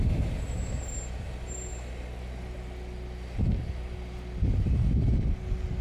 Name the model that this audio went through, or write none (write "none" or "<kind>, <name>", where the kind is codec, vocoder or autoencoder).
none